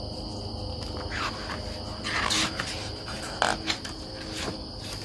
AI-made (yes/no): no